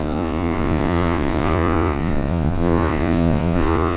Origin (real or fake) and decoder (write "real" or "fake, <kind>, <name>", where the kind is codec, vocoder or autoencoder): fake, vocoder, Vocos